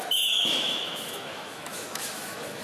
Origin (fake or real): fake